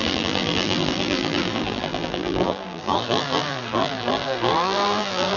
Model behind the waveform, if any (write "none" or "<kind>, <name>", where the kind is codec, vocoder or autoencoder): vocoder, BigVGAN v2